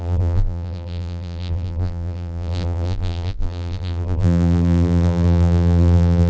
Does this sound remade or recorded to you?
remade